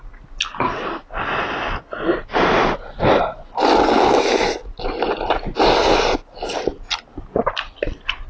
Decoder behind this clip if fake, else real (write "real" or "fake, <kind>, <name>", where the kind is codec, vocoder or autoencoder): real